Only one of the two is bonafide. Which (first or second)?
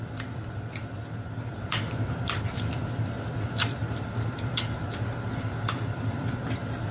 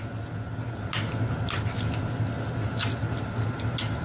second